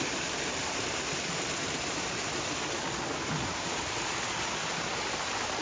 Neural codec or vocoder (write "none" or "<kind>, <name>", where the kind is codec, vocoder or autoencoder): none